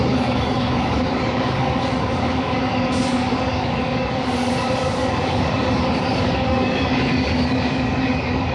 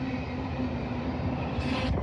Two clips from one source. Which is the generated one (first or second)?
first